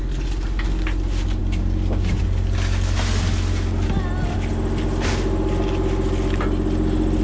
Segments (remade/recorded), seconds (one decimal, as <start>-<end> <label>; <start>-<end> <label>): 0.0-7.2 recorded

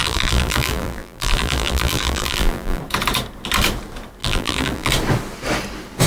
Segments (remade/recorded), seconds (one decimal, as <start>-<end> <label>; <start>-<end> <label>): 0.0-2.8 remade; 2.8-4.2 recorded; 4.2-4.9 remade; 4.9-6.1 recorded

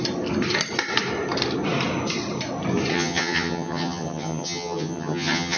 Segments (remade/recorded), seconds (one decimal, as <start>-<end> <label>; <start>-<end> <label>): 0.0-2.9 recorded; 2.9-5.6 remade